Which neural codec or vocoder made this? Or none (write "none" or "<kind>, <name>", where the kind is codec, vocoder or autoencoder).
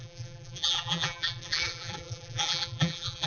vocoder, BigVGAN v2